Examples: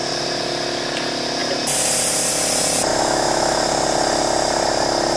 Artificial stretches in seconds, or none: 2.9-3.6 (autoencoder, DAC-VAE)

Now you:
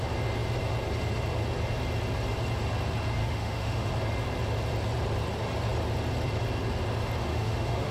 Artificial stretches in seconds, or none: 3.2-3.9 (autoencoder, DAC-VAE); 7.3-7.9

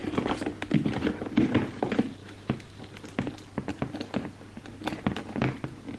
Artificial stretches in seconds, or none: 2.2-2.8 (autoencoder, DAC-VAE)

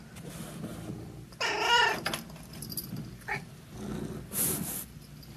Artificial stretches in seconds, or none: none